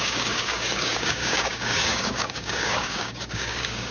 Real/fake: fake